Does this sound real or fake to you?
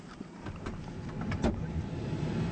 fake